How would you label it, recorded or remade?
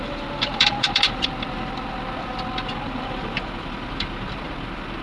remade